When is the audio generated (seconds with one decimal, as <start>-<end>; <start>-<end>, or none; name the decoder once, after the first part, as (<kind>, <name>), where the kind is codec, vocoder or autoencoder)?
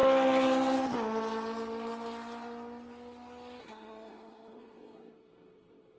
3.6-6.0 (codec, SNAC)